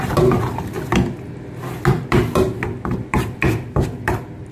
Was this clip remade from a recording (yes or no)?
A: no